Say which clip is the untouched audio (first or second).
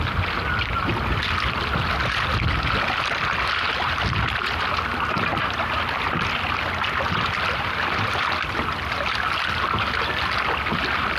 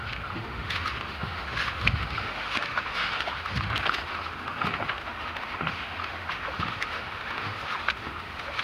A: first